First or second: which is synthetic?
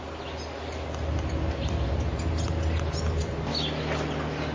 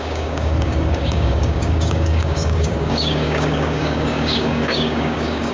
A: second